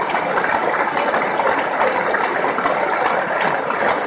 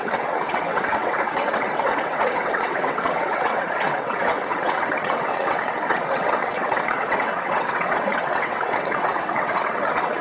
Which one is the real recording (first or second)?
first